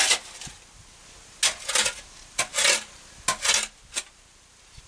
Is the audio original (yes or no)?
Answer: yes